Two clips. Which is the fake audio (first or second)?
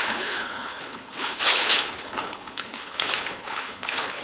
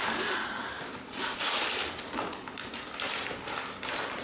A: first